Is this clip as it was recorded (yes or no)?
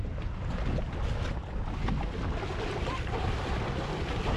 yes